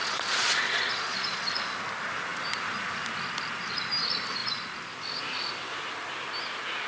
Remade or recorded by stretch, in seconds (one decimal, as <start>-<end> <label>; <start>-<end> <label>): 0.0-1.4 remade; 1.4-6.9 recorded